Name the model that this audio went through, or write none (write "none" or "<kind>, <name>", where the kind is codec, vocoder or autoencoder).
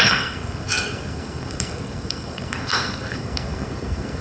codec, SNAC